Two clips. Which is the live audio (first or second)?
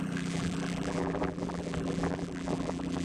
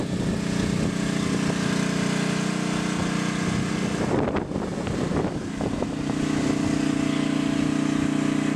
second